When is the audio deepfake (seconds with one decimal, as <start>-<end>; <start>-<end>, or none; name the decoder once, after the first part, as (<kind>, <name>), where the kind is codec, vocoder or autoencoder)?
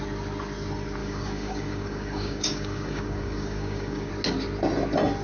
1.0-4.1 (codec, DAC)